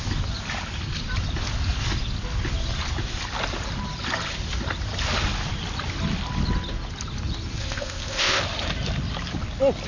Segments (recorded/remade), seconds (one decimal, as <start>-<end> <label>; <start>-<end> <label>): 0.0-7.6 recorded; 7.6-8.4 remade; 8.4-9.9 recorded